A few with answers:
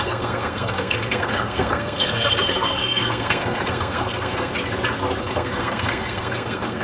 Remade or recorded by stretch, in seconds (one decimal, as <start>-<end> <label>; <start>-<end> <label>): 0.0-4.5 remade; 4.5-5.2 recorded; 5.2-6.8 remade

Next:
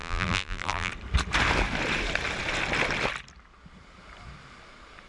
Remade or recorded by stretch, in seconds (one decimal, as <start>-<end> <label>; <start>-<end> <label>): 0.0-0.9 remade; 0.9-5.1 recorded

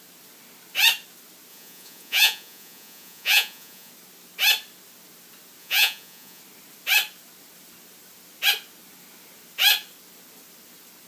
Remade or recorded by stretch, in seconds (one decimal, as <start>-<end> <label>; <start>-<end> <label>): 0.0-1.5 recorded; 1.5-3.9 remade; 3.9-5.6 recorded; 5.6-6.4 remade; 6.4-11.1 recorded

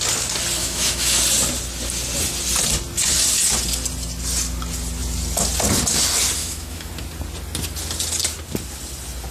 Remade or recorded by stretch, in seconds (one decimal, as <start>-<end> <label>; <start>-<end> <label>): 0.0-0.6 recorded; 0.6-1.2 remade; 1.2-6.4 recorded; 6.4-6.9 remade; 6.9-9.3 recorded

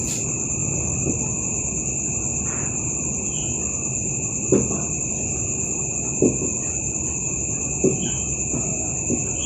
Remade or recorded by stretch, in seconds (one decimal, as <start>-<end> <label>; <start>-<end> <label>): 0.0-0.6 recorded; 0.6-1.3 remade; 1.3-6.5 recorded; 6.5-7.1 remade; 7.1-9.5 recorded

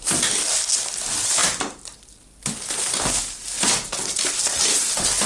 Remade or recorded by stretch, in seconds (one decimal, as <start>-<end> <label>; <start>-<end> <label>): 0.0-5.3 recorded

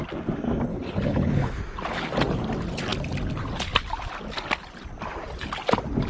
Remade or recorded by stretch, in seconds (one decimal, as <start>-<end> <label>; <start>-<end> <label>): 0.0-0.7 recorded; 0.7-1.6 remade; 1.6-6.1 recorded

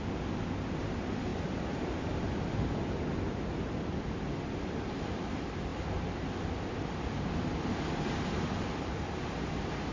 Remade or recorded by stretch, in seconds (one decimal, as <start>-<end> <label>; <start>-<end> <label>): 0.0-1.3 recorded; 1.3-2.2 remade; 2.2-9.9 recorded